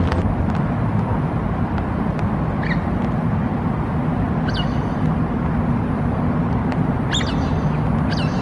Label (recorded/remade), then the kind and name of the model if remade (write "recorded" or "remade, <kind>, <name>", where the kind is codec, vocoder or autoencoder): recorded